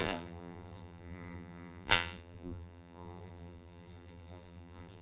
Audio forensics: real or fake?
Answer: fake